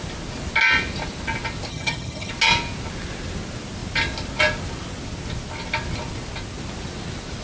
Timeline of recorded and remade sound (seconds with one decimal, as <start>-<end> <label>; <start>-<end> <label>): 0.0-1.7 recorded; 1.7-2.3 remade; 2.3-7.4 recorded